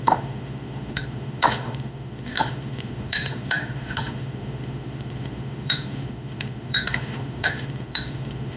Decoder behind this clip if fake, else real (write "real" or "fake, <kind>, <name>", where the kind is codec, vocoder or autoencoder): fake, autoencoder, DAC-VAE